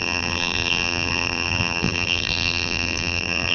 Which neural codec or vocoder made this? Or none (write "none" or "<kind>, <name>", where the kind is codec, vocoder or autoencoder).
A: vocoder, BigVGAN v2